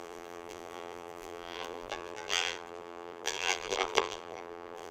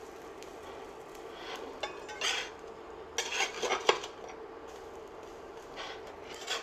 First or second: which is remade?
first